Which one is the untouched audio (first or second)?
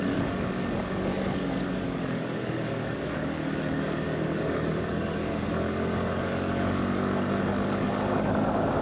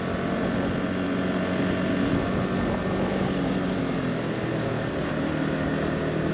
second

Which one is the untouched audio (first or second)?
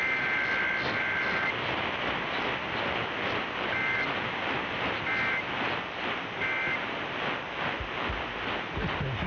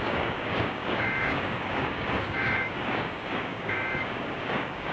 first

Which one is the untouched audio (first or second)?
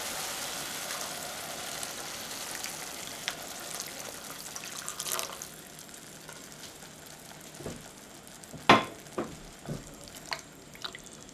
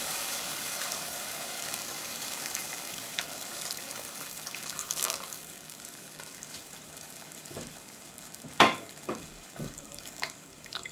first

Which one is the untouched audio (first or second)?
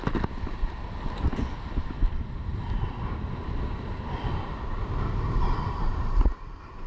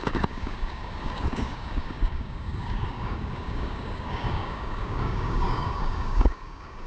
first